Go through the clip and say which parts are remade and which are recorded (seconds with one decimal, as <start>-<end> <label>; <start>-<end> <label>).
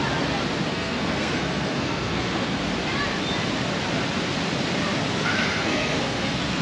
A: 0.0-0.7 recorded; 0.7-2.6 remade; 2.6-5.2 recorded; 5.2-6.6 remade